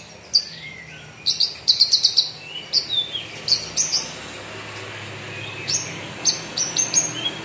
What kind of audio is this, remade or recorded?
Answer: recorded